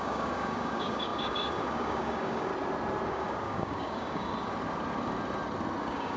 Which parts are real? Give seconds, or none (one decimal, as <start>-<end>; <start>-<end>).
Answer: 2.5-3.1; 4.3-5.8